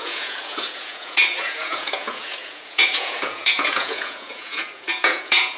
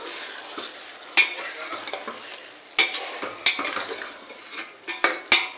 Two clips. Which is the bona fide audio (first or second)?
second